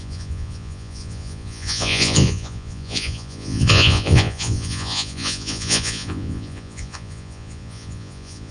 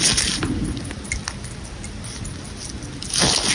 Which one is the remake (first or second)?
first